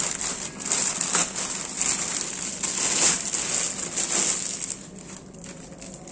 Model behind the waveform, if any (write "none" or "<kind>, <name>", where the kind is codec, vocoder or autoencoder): none